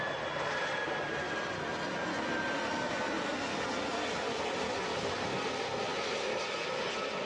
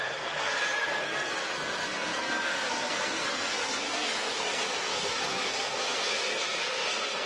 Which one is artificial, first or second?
second